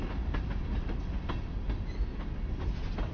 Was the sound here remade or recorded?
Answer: recorded